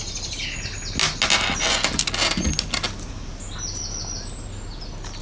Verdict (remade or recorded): recorded